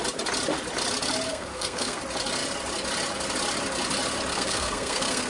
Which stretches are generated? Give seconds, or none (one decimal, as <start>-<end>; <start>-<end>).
1.3-2.0; 4.3-5.3

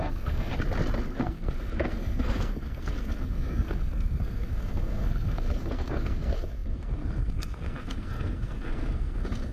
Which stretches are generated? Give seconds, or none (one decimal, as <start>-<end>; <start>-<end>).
0.0-0.5; 1.2-9.5

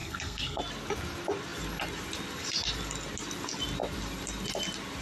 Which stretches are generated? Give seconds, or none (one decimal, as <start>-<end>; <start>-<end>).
0.0-0.6

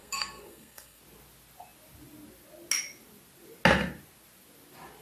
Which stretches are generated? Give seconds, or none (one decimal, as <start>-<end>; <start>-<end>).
0.0-1.0